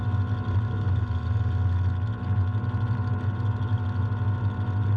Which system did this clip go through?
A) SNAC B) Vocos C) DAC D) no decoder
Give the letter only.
D